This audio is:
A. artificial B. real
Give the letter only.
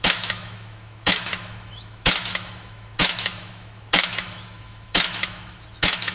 A